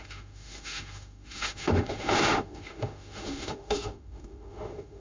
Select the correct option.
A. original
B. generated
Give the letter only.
B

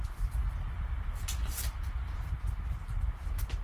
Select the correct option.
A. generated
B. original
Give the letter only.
B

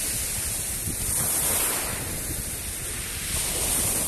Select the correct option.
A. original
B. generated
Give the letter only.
A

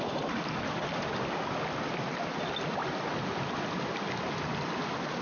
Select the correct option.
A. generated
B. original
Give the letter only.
B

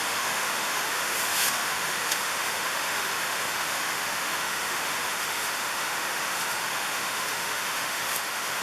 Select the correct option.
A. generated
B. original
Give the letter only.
A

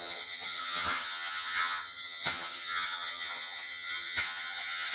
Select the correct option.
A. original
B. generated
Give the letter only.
B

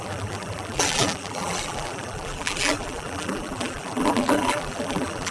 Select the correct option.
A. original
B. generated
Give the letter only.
B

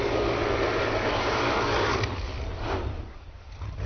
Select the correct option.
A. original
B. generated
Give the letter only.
B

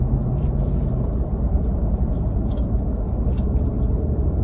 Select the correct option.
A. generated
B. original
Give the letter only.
A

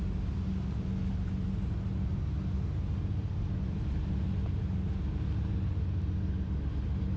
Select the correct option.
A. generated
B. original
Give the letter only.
B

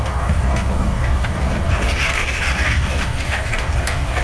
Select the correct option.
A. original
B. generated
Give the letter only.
B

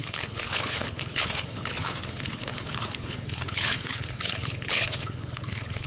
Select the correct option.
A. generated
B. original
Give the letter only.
A